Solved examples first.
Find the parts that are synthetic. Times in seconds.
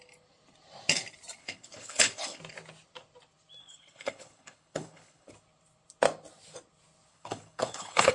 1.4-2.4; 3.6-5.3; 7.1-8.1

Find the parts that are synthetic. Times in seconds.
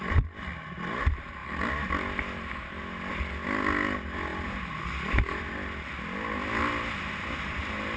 none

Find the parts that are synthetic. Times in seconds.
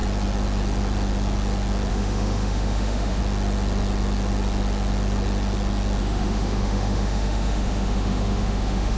1.9-3.2; 6.0-9.0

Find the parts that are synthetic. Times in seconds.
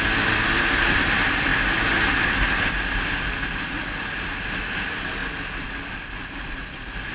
none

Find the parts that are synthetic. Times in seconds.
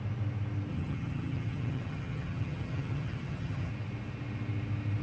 0.7-3.7